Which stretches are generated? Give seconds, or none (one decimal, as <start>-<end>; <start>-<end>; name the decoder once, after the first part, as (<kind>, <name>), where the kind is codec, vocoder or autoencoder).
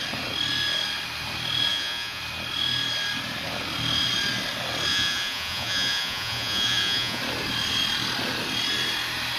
1.7-2.2 (vocoder, Vocos); 4.9-7.2